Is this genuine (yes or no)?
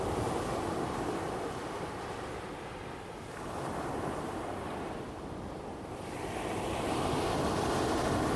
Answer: yes